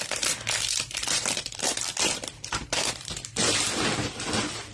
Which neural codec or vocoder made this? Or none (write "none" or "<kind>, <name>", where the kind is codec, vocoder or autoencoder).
vocoder, BigVGAN v2